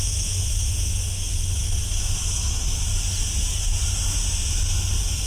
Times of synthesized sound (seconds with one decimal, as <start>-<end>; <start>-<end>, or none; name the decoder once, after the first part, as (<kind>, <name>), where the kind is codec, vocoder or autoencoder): 0.0-2.9 (autoencoder, DAC-VAE)